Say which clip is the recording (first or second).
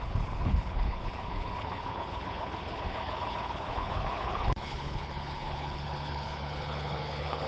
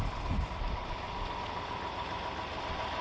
second